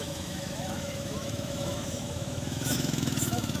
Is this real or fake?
fake